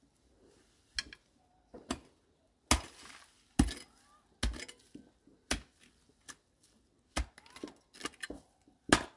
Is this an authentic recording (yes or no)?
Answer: yes